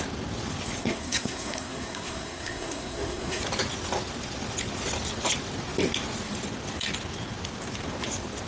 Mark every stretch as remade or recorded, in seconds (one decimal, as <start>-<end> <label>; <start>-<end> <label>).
0.0-0.8 recorded; 0.8-3.4 remade; 3.4-8.5 recorded